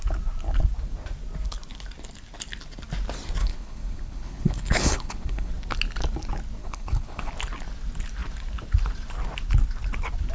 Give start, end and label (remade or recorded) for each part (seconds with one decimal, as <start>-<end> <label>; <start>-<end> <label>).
0.0-3.4 recorded; 3.4-5.5 remade; 5.5-6.6 recorded; 6.6-7.3 remade; 7.3-10.3 recorded